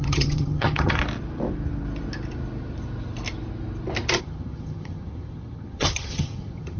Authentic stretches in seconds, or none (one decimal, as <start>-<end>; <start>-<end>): 1.0-4.2